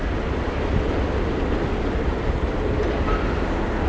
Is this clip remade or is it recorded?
recorded